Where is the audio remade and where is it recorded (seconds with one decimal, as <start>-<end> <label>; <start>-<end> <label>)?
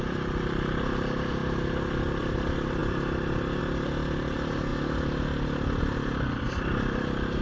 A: 0.0-1.4 remade; 1.4-2.0 recorded; 2.0-4.7 remade; 4.7-5.8 recorded; 5.8-7.4 remade